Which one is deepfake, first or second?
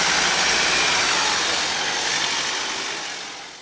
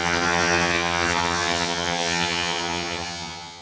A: second